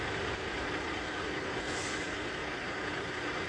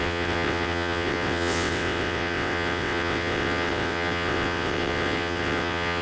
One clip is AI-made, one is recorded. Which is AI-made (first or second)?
second